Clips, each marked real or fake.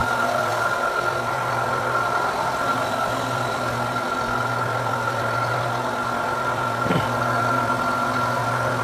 real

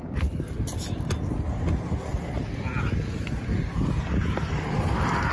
real